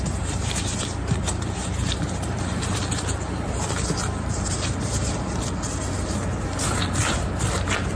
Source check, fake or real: fake